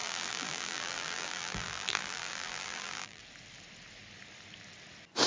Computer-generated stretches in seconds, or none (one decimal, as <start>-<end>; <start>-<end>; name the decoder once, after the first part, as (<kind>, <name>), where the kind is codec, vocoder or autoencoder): 0.0-3.2 (vocoder, BigVGAN v2)